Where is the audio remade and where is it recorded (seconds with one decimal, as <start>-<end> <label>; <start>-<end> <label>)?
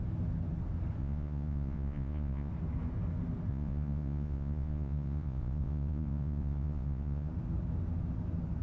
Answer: 0.0-1.0 recorded; 1.0-2.5 remade; 2.5-3.5 recorded; 3.5-7.3 remade; 7.3-8.6 recorded